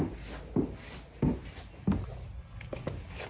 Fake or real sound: real